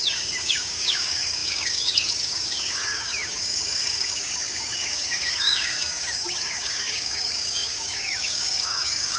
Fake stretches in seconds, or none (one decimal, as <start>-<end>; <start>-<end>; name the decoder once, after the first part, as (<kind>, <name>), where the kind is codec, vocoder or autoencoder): 0.0-9.2 (codec, DAC)